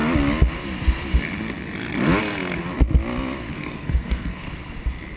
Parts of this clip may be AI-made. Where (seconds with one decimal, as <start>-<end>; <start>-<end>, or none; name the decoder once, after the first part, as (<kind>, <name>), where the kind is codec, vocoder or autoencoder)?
3.5-4.5 (codec, SNAC)